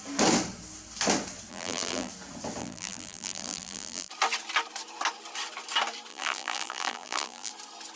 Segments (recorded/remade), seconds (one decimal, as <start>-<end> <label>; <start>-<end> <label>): 0.0-1.5 recorded; 1.5-2.1 remade; 2.1-2.6 recorded; 2.6-4.1 remade; 4.1-6.1 recorded; 6.1-7.5 remade; 7.5-8.0 recorded